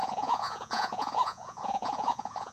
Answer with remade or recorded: remade